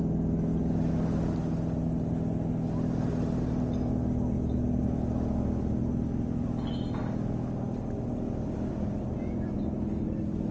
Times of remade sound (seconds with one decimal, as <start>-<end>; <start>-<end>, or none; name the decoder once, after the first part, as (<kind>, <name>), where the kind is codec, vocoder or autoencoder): none